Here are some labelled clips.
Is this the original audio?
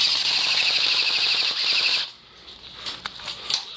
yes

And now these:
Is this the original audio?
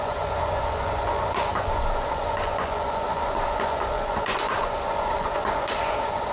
no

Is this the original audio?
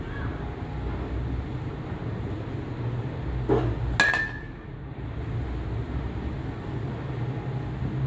yes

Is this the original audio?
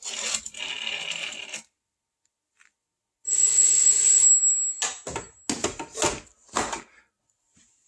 yes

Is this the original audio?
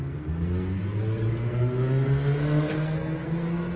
no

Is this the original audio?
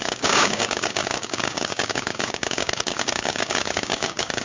no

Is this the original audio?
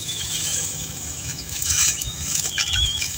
no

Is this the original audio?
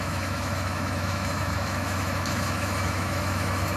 no